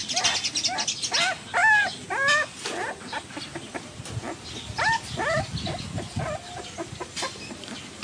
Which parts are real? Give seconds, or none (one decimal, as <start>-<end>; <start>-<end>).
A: 0.0-8.0